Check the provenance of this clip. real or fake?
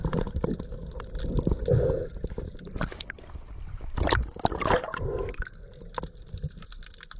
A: real